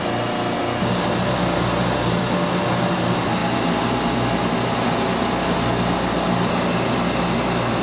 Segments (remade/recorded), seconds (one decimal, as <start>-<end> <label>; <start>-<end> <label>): 0.0-7.8 recorded